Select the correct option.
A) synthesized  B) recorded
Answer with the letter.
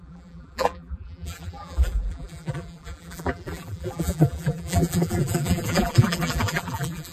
A